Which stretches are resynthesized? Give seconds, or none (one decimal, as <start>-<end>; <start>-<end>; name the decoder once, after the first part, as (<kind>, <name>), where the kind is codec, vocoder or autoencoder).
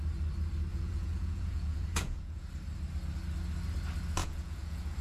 0.7-2.5 (vocoder, Vocos); 4.2-5.0